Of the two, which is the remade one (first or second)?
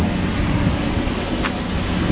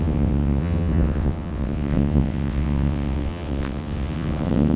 second